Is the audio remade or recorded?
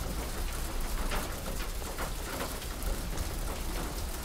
remade